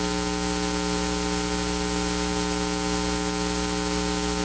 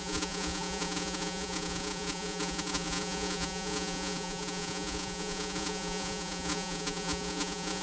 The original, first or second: first